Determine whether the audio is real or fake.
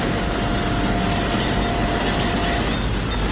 real